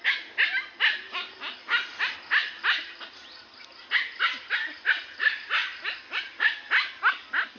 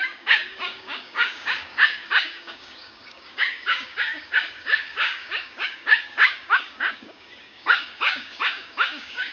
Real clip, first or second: first